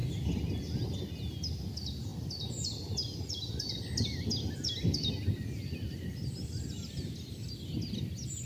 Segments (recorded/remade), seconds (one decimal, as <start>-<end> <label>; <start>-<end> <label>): 0.0-8.5 recorded